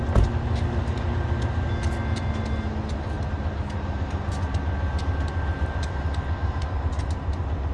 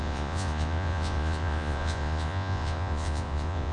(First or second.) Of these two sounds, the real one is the first